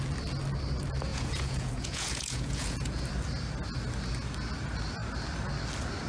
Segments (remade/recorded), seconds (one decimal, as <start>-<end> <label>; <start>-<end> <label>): 0.0-1.1 recorded; 1.1-3.0 remade; 3.0-6.1 recorded